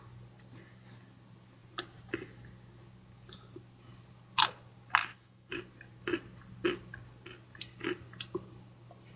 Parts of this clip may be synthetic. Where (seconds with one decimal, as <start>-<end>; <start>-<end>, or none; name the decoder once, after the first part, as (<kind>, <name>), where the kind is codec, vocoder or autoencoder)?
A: 5.0-5.5 (autoencoder, DAC-VAE)